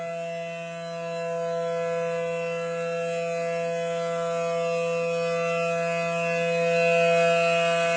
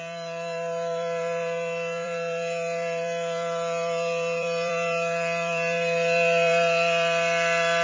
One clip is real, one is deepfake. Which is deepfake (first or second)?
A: second